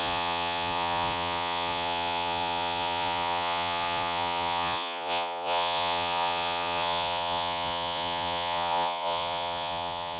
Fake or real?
fake